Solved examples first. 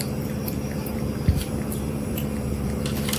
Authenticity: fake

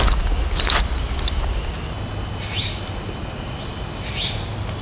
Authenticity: real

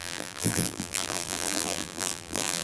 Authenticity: fake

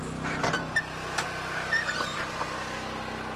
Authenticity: real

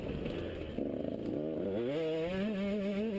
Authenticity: real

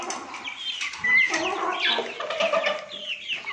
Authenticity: real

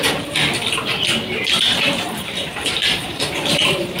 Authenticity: fake